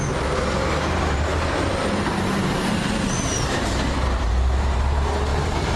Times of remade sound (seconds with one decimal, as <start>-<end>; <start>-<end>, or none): 0.0-5.8